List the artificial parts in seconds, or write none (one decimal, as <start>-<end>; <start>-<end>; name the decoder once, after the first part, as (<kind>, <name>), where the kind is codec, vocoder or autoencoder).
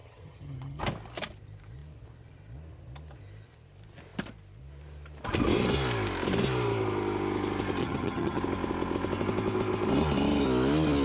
0.0-0.8 (vocoder, HiFi-GAN); 7.8-8.4